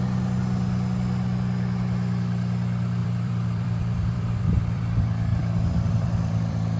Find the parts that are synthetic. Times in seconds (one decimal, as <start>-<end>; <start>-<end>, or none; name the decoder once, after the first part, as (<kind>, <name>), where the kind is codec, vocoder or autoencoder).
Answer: 3.0-4.8 (vocoder, BigVGAN v2); 5.3-6.8